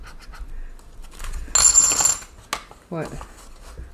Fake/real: real